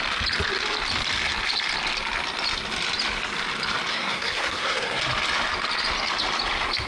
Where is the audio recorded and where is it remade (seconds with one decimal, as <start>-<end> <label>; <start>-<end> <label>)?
0.0-3.9 recorded; 3.9-5.0 remade; 5.0-6.9 recorded